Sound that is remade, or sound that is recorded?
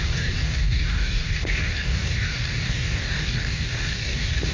remade